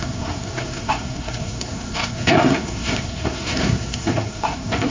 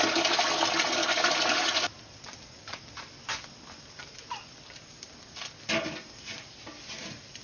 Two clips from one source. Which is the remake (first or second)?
first